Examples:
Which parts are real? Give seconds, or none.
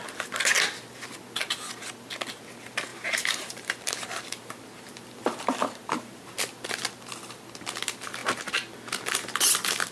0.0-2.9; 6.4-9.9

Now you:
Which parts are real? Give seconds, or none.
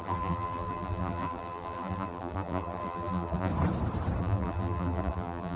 3.5-4.2